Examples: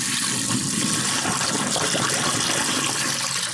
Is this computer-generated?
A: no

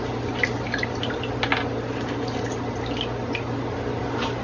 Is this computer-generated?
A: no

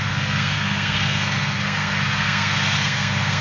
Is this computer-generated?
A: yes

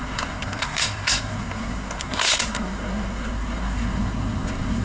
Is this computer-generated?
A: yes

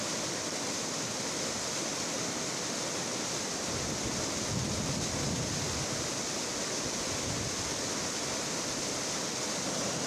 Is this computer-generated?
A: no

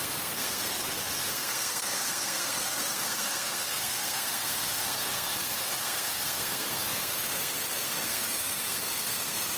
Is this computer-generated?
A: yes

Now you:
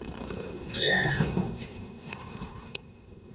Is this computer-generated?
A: yes